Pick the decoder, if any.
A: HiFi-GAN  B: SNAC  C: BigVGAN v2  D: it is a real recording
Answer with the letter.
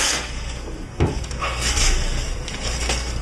B